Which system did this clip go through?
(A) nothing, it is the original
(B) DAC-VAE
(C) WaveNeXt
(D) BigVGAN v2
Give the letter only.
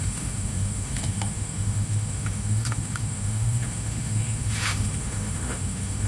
B